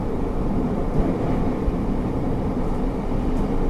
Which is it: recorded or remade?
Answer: remade